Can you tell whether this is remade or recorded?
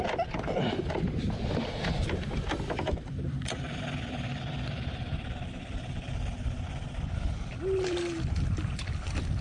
remade